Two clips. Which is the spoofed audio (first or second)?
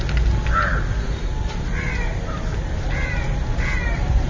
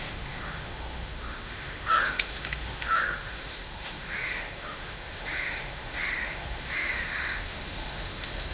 second